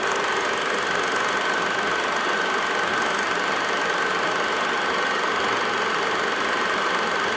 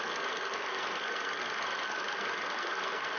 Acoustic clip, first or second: first